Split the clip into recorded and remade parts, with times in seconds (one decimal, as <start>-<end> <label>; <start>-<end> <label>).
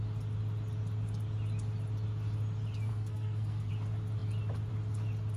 0.0-2.9 recorded; 2.9-3.7 remade; 3.7-5.4 recorded